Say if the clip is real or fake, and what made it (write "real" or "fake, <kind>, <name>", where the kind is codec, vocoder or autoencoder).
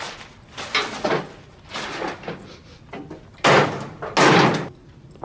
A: real